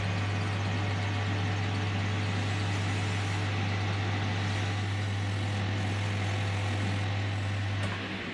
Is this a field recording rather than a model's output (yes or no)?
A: yes